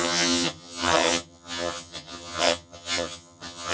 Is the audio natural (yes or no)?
no